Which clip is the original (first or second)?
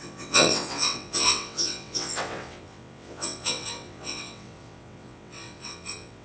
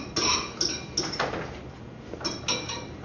second